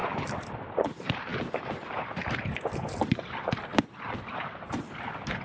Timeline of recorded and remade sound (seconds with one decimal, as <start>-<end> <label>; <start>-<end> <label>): 0.0-0.5 recorded; 0.5-1.3 remade; 1.3-1.9 recorded; 1.9-3.7 remade; 3.7-5.0 recorded; 5.0-5.4 remade